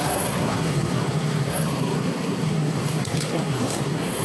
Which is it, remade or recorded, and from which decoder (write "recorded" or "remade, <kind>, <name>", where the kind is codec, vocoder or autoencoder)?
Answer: remade, codec, SNAC